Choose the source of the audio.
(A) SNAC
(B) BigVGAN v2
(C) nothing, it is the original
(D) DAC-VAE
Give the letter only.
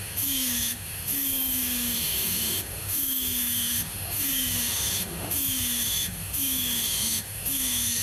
D